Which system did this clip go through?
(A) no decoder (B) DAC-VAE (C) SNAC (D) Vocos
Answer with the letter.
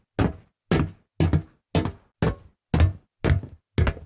A